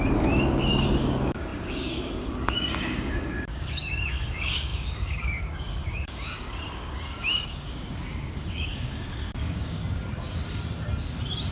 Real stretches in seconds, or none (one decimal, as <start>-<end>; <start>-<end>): 9.8-11.5